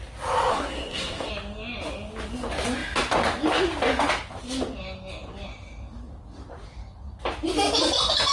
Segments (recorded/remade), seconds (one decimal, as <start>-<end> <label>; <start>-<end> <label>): 0.0-0.5 recorded; 0.5-1.3 remade; 1.3-8.3 recorded